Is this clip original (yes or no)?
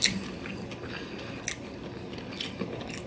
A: yes